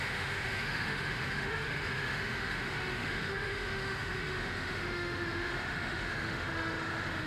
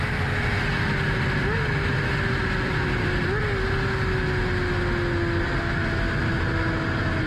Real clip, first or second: second